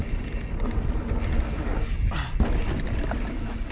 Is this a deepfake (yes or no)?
no